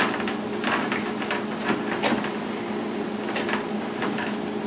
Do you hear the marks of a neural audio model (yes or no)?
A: no